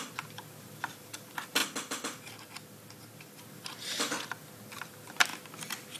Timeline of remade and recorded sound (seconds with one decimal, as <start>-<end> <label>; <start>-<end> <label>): 0.0-1.6 remade; 1.6-3.4 recorded; 3.4-6.0 remade